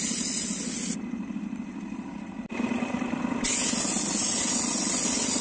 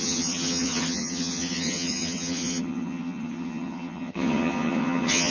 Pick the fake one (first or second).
second